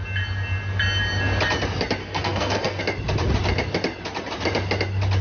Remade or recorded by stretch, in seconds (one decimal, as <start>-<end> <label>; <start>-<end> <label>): 0.0-2.0 recorded; 2.0-2.8 remade; 2.8-5.2 recorded